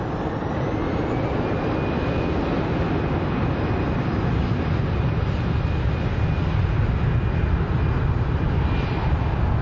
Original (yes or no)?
yes